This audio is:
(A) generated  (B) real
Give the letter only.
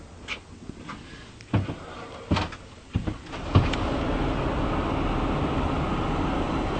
B